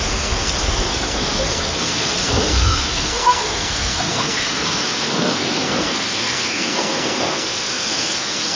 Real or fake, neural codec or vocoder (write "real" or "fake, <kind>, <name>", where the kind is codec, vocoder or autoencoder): fake, codec, SNAC